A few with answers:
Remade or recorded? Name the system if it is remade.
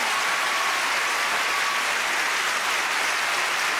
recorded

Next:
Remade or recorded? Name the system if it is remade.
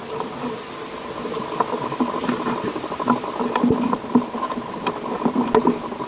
recorded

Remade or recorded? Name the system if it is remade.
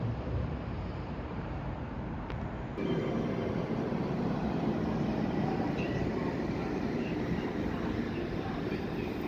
remade, vocoder, BigVGAN v2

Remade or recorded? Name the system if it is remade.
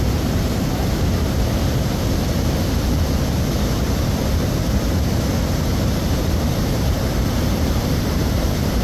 remade, vocoder, BigVGAN v2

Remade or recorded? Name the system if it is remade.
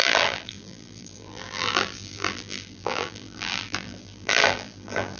remade, vocoder, BigVGAN v2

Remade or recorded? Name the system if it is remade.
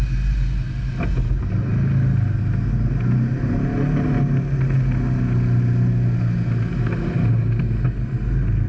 recorded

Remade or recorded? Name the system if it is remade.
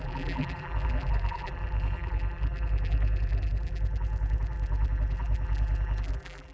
remade, vocoder, BigVGAN v2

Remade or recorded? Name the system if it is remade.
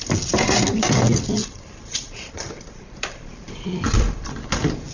remade, vocoder, BigVGAN v2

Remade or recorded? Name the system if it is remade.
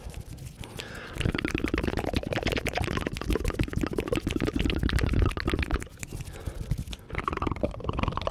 recorded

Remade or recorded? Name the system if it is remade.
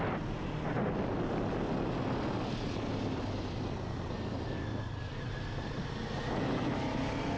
recorded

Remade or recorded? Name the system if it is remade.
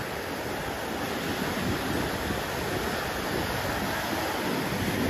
recorded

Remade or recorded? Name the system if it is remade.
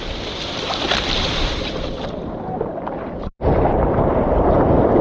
remade, vocoder, BigVGAN v2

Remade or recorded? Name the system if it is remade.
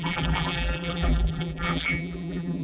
remade, vocoder, BigVGAN v2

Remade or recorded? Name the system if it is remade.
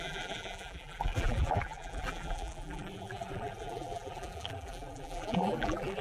remade, vocoder, BigVGAN v2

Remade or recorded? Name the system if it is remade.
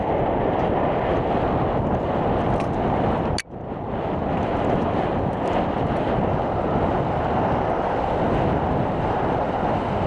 recorded